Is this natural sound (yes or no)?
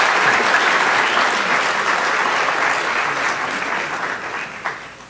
yes